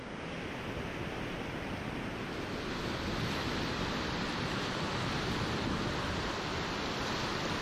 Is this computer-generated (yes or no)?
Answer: no